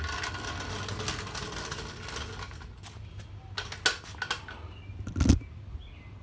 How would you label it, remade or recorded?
recorded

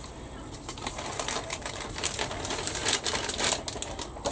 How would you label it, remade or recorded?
recorded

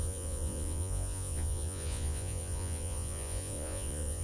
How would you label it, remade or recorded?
remade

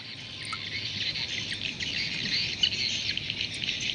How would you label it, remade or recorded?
recorded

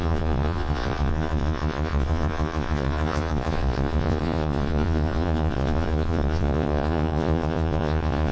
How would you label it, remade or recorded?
remade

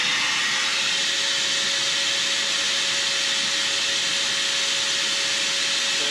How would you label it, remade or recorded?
recorded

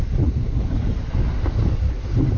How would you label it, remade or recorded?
recorded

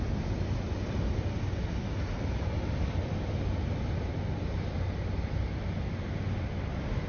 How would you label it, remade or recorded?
recorded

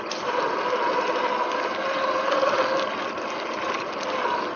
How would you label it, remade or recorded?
recorded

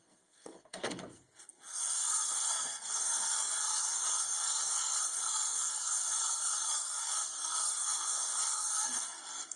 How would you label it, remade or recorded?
remade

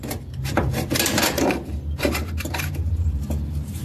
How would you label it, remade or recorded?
remade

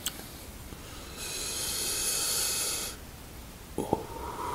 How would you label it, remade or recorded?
recorded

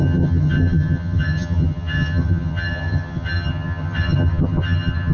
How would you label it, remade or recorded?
remade